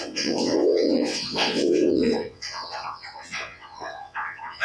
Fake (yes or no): yes